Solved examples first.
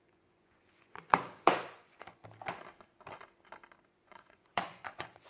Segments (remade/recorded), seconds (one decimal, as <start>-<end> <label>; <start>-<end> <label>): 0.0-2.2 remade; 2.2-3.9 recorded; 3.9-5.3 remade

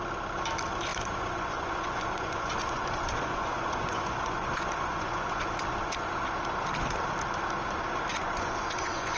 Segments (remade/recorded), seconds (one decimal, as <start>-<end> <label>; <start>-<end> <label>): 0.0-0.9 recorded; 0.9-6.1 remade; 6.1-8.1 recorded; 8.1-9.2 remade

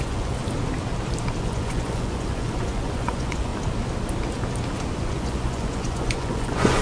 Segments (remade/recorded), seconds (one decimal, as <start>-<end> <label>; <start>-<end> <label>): 0.0-0.4 remade; 0.4-1.4 recorded; 1.4-3.5 remade; 3.5-5.0 recorded; 5.0-6.8 remade

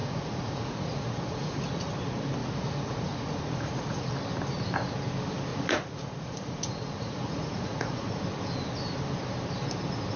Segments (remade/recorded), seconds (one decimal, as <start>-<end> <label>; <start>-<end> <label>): 0.0-1.9 remade; 1.9-2.4 recorded; 2.4-4.1 remade; 4.1-5.5 recorded; 5.5-8.2 remade; 8.2-10.2 recorded

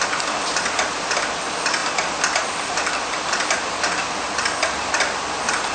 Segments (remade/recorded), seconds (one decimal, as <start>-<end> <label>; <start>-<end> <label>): 0.0-5.7 recorded

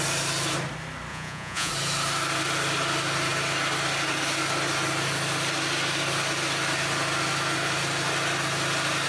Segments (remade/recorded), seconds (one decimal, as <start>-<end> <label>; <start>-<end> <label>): 0.0-1.1 recorded; 1.1-1.7 remade; 1.7-9.1 recorded